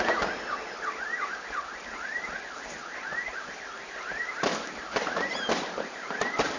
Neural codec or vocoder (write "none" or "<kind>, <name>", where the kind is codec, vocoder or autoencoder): none